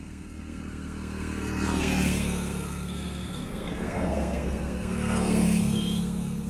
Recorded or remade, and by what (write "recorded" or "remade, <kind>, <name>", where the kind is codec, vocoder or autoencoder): remade, codec, SNAC